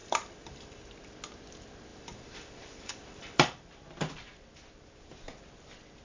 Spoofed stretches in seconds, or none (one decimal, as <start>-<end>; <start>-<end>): 0.0-0.9; 1.9-3.7